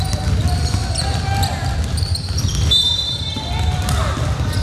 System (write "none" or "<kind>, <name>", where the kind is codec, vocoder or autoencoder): none